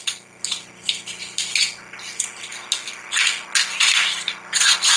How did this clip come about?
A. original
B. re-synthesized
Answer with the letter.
A